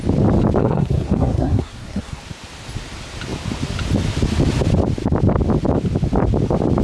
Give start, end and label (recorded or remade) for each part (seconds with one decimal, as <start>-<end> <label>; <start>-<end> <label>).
0.0-0.6 recorded; 0.6-2.2 remade; 2.2-6.8 recorded